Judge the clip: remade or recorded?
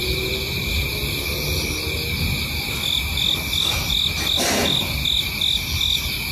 recorded